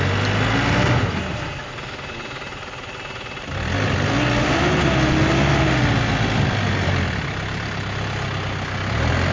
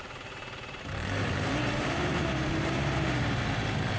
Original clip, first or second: first